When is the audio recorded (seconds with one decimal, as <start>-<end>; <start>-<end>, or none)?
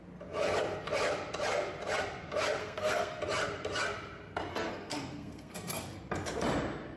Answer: 0.0-2.6; 3.2-4.5; 6.0-7.0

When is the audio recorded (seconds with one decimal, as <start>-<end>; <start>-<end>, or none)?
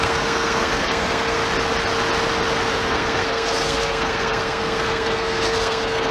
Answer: 1.4-2.7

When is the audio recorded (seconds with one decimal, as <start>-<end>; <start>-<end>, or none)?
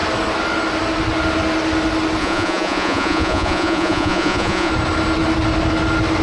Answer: 0.0-2.2; 4.7-6.2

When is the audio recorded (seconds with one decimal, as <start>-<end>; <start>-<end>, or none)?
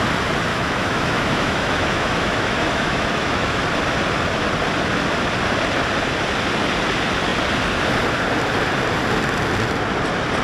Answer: 0.0-0.5; 3.6-10.4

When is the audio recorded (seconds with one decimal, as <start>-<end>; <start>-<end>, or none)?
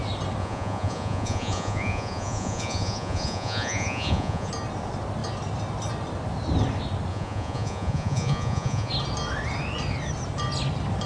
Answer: 0.0-0.4; 4.5-7.1; 8.9-11.1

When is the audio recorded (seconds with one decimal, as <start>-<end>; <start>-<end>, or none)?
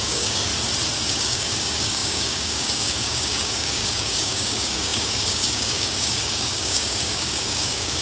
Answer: 0.5-1.1